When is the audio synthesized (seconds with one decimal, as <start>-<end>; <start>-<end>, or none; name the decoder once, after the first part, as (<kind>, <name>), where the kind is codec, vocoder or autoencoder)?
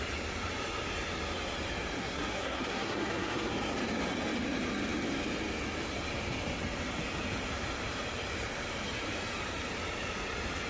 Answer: 2.0-3.5 (codec, SNAC)